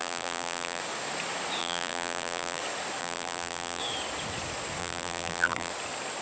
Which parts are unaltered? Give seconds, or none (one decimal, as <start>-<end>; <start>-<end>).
0.8-1.6; 2.6-3.0; 3.8-4.8; 5.7-6.2